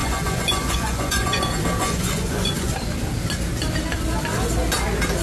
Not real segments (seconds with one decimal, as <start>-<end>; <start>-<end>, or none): 0.0-1.4; 1.8-2.7